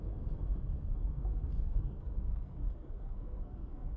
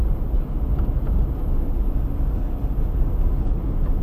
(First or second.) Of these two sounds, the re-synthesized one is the first